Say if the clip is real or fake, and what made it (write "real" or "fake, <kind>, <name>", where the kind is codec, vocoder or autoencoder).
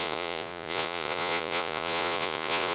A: fake, vocoder, Vocos